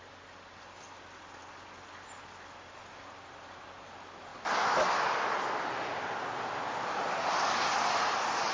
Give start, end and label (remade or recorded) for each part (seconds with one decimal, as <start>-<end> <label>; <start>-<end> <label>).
0.0-8.5 recorded